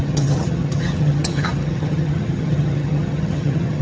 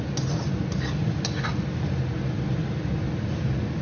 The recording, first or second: second